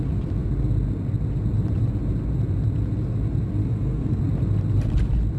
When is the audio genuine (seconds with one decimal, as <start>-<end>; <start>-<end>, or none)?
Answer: 0.0-3.6; 4.2-5.4